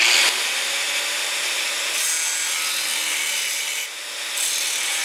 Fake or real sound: real